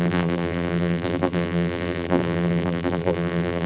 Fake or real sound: fake